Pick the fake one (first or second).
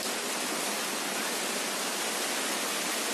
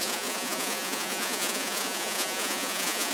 second